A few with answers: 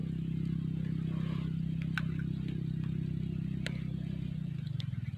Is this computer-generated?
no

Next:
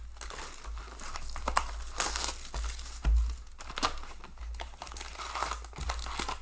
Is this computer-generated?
no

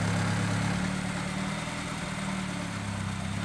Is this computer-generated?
no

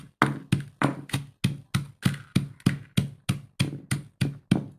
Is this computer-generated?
no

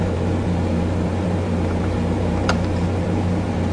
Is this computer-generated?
yes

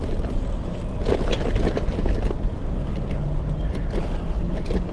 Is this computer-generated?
no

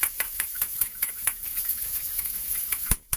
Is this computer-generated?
yes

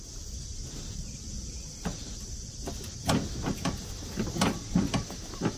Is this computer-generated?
no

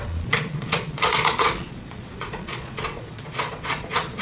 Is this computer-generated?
yes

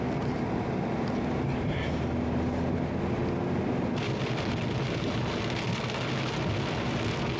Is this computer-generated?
no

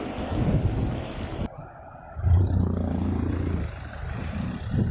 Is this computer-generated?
yes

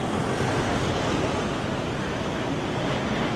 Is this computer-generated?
no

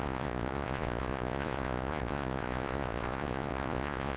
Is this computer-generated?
yes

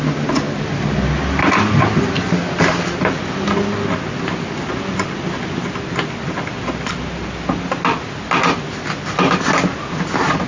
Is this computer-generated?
no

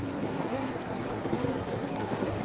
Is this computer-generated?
yes